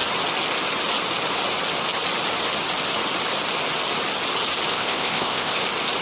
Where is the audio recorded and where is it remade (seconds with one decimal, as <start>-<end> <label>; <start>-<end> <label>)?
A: 0.0-4.7 recorded; 4.7-5.6 remade; 5.6-6.0 recorded

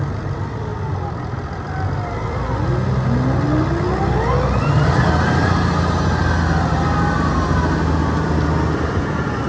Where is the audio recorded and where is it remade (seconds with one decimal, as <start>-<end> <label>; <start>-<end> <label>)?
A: 0.0-9.5 recorded